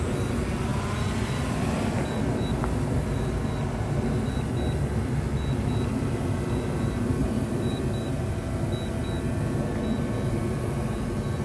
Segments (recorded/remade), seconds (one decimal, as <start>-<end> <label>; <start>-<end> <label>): 0.0-0.7 recorded; 0.7-3.0 remade; 3.0-7.2 recorded; 7.2-8.2 remade; 8.2-11.4 recorded